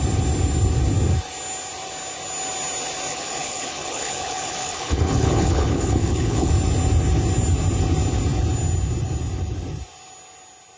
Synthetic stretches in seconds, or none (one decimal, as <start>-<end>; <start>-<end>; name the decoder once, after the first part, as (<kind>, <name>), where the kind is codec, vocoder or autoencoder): 3.1-6.5 (codec, HILCodec)